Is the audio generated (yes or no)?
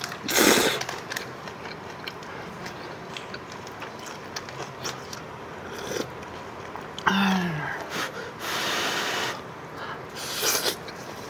no